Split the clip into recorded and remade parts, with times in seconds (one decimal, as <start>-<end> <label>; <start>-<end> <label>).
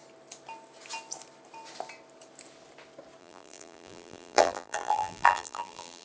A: 0.0-3.2 recorded; 3.2-6.0 remade